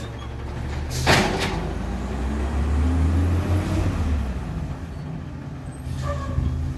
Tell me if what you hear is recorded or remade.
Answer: recorded